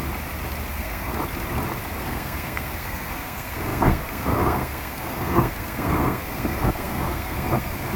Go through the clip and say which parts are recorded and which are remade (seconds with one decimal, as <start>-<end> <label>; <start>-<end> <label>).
0.0-0.7 recorded; 0.7-1.1 remade; 1.1-2.0 recorded; 2.0-8.0 remade